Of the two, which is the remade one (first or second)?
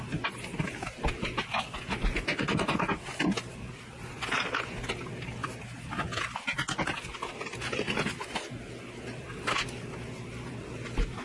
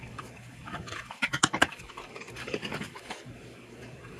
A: second